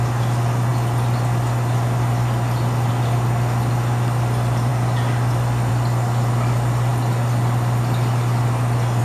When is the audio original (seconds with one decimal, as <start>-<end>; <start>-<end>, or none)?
0.0-9.0